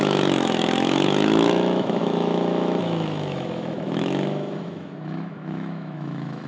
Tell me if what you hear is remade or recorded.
remade